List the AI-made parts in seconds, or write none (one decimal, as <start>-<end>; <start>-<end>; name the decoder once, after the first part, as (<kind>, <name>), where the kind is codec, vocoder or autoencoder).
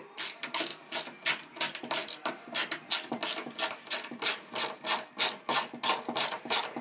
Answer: none